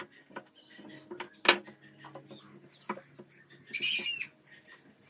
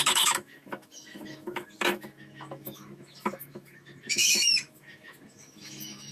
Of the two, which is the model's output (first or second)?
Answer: second